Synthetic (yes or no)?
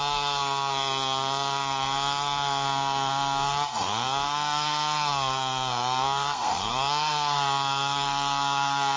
yes